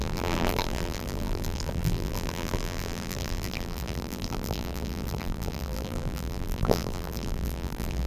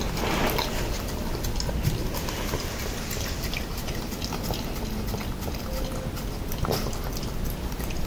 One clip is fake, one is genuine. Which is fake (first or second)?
first